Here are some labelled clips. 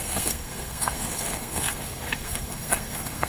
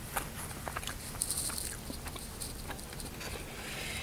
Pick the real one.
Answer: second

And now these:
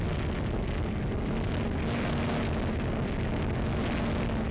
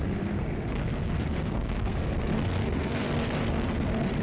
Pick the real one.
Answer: first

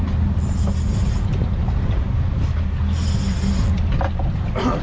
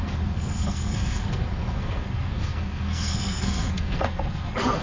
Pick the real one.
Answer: first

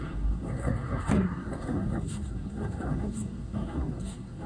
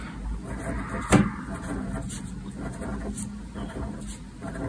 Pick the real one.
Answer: second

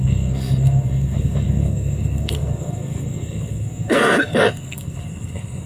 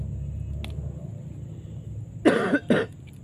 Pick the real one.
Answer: second